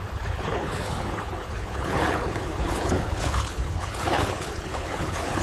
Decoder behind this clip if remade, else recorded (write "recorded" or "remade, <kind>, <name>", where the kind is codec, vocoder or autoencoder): remade, codec, HILCodec